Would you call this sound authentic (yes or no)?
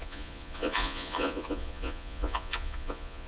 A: no